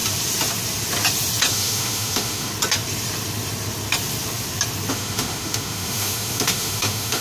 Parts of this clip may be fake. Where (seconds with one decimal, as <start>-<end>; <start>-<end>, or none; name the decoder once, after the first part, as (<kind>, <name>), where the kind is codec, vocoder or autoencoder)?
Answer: 1.5-2.5 (autoencoder, DAC-VAE); 4.9-7.2